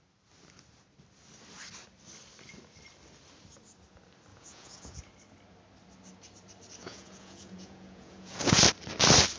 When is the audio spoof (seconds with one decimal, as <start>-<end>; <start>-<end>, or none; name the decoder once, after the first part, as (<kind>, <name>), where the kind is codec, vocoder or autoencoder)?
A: 4.3-5.0 (vocoder, Vocos); 6.8-8.6